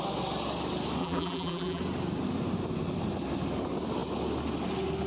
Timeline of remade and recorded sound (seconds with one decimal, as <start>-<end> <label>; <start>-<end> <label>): 0.0-1.0 recorded; 1.0-1.8 remade; 1.8-5.1 recorded